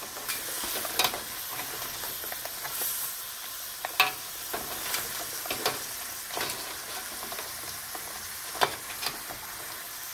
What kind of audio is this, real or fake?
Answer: real